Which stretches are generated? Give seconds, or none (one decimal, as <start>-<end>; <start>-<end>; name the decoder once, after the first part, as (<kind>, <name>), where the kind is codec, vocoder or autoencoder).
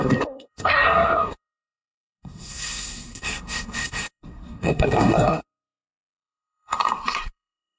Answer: 0.0-7.8 (codec, SNAC)